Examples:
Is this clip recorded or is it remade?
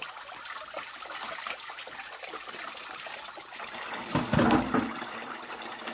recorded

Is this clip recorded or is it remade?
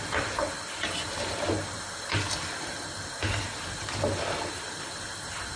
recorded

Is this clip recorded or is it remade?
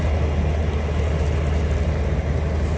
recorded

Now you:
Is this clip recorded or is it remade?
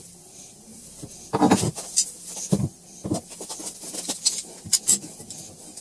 recorded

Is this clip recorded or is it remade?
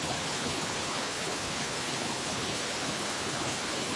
remade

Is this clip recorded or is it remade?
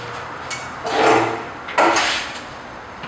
recorded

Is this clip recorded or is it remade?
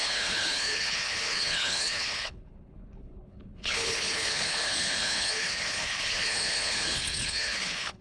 remade